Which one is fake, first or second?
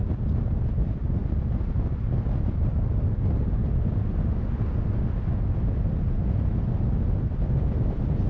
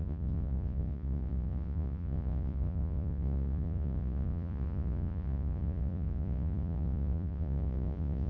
second